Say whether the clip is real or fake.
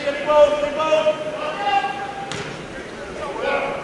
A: real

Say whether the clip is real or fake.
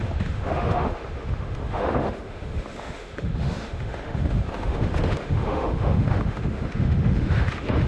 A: fake